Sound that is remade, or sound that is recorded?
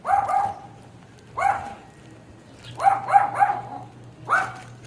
recorded